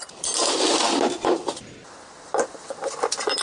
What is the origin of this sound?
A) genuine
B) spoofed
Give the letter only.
A